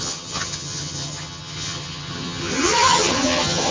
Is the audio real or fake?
fake